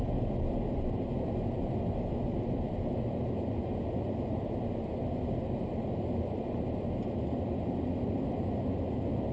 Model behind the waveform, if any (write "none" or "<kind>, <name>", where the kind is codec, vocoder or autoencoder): none